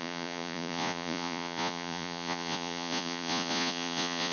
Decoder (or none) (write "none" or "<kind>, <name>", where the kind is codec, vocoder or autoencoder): vocoder, Vocos